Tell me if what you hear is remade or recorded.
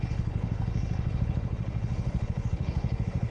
remade